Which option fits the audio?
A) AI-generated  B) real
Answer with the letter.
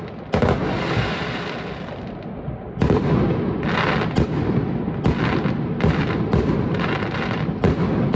B